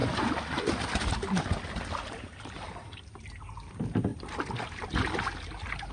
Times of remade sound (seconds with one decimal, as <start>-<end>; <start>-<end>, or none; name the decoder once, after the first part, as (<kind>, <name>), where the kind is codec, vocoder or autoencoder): none